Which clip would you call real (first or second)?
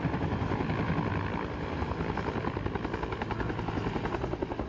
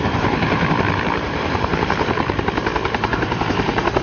first